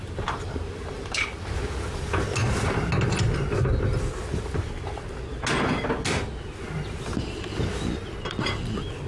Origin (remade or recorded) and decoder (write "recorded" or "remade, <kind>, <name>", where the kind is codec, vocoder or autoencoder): recorded